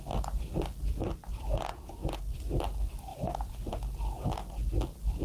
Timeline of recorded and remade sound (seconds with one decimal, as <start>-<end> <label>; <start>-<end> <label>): 0.0-1.7 recorded; 1.7-2.2 remade; 2.2-5.2 recorded